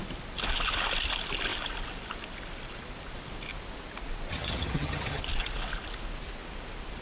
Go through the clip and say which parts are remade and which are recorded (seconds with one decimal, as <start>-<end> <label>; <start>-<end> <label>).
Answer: 0.0-4.3 recorded; 4.3-5.2 remade; 5.2-7.0 recorded